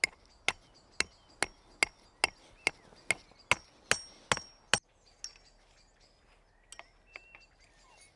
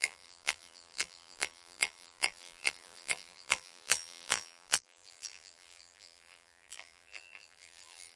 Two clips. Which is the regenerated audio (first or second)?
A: second